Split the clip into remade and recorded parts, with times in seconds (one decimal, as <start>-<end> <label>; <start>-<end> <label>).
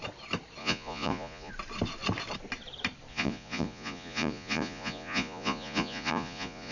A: 0.0-0.6 recorded; 0.6-1.5 remade; 1.5-3.1 recorded; 3.1-6.7 remade